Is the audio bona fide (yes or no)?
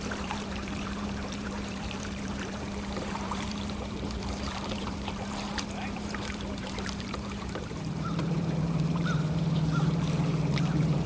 no